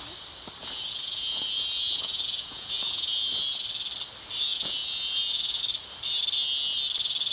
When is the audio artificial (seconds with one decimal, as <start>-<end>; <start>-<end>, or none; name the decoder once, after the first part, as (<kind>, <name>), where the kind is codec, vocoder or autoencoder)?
0.6-3.3 (vocoder, Vocos); 4.5-5.6